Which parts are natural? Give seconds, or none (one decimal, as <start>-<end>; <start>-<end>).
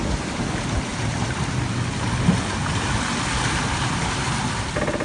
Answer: 0.0-5.0